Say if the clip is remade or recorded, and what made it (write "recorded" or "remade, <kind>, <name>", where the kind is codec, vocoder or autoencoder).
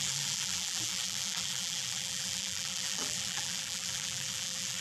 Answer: remade, vocoder, BigVGAN v2